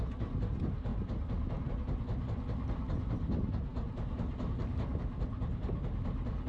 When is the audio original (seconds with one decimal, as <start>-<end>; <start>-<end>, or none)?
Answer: 0.0-6.5